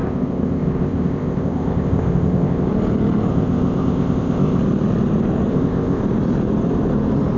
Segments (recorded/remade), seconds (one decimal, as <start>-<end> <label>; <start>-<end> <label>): 0.0-2.7 remade; 2.7-3.3 recorded; 3.3-4.6 remade; 4.6-5.5 recorded; 5.5-6.0 remade; 6.0-7.4 recorded